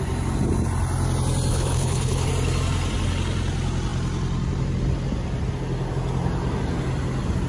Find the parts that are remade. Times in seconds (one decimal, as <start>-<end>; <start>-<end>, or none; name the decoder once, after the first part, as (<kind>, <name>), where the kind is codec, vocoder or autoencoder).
1.5-2.3 (codec, HILCodec)